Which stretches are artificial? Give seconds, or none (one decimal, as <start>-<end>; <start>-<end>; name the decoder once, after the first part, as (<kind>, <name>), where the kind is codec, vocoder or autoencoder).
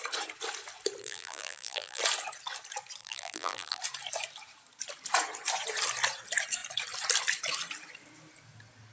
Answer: 1.0-2.0 (vocoder, BigVGAN v2); 3.0-3.8